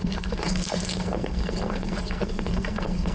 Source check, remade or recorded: remade